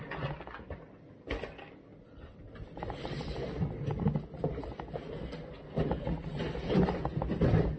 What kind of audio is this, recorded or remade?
recorded